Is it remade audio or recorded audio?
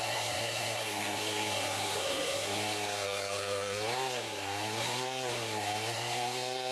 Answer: remade